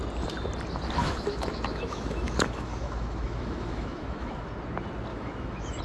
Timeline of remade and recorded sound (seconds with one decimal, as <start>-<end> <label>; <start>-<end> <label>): 0.0-1.0 recorded; 1.0-4.5 remade; 4.5-5.1 recorded; 5.1-5.8 remade